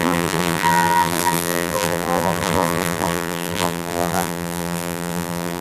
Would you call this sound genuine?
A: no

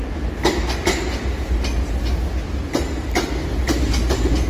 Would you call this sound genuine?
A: yes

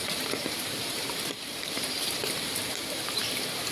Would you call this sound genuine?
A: no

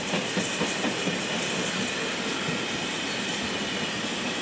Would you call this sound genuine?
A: yes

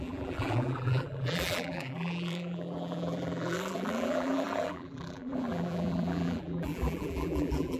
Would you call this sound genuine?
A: no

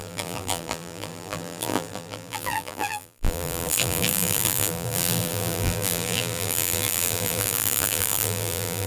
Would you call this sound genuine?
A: no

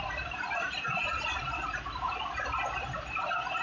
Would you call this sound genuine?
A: yes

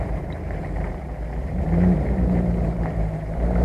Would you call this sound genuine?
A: no